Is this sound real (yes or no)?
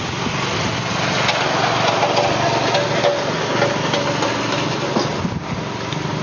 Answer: yes